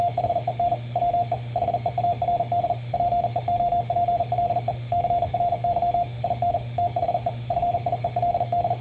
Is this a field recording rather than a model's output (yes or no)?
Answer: no